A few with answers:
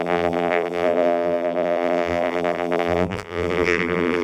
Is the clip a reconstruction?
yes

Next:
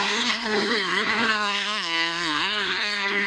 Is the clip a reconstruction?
yes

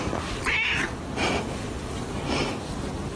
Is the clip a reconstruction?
no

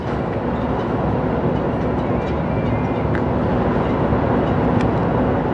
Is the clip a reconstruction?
no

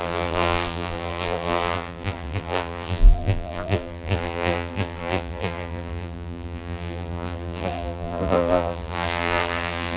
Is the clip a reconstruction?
yes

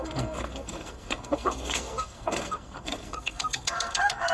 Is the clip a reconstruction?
yes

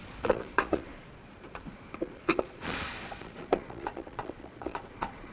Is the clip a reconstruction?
yes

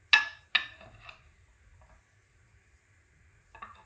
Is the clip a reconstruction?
no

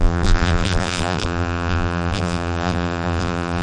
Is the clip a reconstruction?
yes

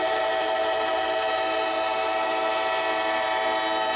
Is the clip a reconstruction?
no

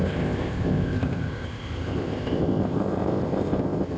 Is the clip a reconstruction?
yes